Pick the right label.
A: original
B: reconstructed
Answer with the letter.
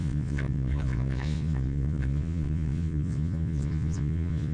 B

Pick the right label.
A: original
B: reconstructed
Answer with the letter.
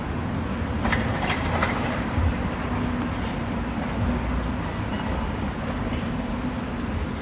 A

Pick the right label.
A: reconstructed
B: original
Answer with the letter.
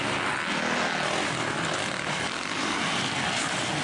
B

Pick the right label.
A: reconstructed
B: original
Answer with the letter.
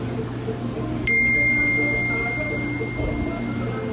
B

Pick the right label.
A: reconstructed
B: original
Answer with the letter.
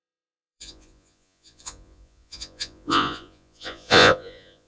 A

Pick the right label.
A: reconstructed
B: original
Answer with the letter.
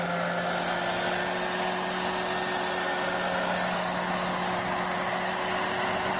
B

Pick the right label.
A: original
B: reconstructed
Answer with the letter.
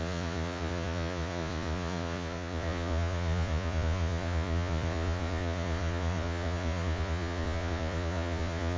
B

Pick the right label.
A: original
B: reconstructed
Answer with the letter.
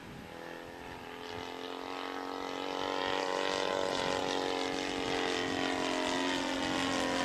A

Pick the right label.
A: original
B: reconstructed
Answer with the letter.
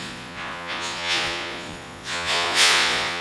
B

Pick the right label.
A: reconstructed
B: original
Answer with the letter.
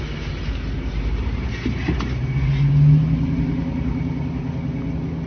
B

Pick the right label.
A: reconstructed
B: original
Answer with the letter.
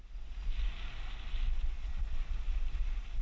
B